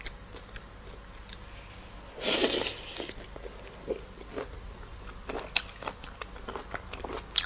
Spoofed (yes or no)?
no